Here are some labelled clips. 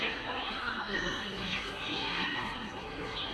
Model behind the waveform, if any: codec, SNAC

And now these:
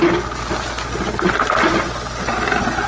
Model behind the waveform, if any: none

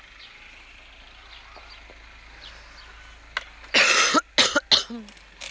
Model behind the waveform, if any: none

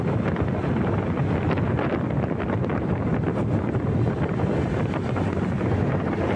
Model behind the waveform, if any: none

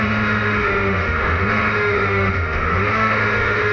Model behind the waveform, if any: autoencoder, DAC-VAE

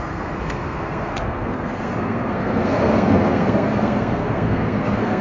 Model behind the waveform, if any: codec, SNAC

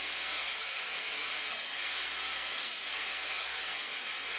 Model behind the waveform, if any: codec, SNAC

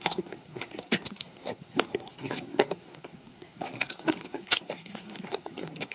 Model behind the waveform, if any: codec, SNAC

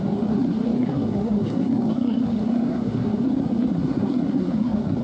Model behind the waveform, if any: codec, SNAC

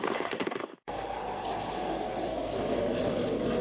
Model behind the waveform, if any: codec, SNAC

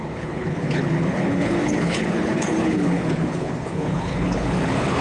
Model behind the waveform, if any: codec, HILCodec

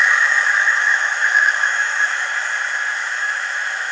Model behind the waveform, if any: autoencoder, DAC-VAE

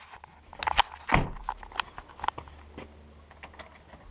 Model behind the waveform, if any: none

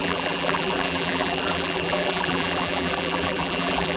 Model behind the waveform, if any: vocoder, BigVGAN v2